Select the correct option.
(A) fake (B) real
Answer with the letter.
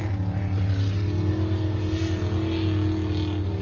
B